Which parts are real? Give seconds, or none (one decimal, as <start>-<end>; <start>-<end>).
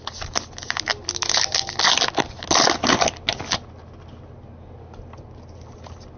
0.0-6.2